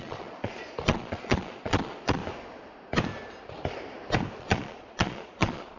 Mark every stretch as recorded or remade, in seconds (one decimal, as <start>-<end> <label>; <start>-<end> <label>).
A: 0.0-2.2 remade; 2.2-4.4 recorded; 4.4-5.8 remade